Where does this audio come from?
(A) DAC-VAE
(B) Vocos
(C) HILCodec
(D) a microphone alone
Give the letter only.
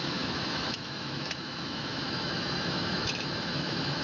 A